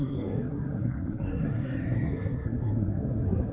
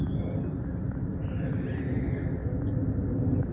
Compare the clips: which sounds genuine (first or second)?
second